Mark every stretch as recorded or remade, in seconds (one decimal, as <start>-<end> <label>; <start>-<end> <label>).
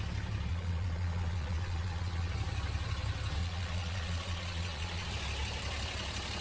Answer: 0.0-0.5 recorded; 0.5-2.3 remade; 2.3-3.4 recorded; 3.4-5.1 remade; 5.1-6.4 recorded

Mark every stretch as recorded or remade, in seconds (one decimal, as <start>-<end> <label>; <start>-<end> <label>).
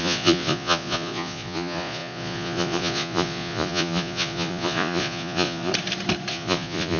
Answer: 0.0-5.7 remade; 5.7-6.3 recorded; 6.3-7.0 remade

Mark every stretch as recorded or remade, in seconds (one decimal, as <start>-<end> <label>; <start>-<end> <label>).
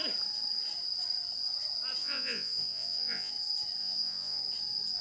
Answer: 0.0-2.0 recorded; 2.0-3.3 remade; 3.3-3.8 recorded; 3.8-4.4 remade; 4.4-5.0 recorded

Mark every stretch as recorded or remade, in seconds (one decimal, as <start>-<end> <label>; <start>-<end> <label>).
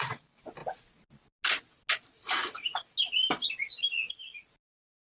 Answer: 0.0-5.1 recorded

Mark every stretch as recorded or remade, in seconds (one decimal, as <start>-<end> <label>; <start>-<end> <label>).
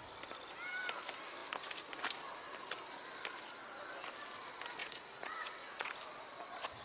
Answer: 0.0-4.8 recorded; 4.8-5.9 remade; 5.9-6.8 recorded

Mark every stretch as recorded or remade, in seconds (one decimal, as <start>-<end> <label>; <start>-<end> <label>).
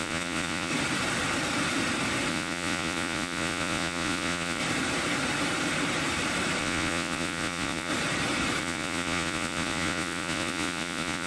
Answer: 0.0-0.7 remade; 0.7-2.3 recorded; 2.3-4.6 remade; 4.6-6.6 recorded; 6.6-7.9 remade; 7.9-8.6 recorded; 8.6-11.3 remade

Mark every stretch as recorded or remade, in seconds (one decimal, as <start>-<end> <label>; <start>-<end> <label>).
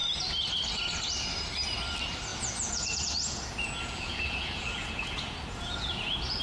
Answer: 0.0-2.3 recorded; 2.3-6.4 remade